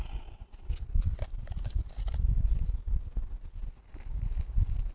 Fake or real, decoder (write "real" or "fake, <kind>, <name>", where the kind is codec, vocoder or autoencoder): real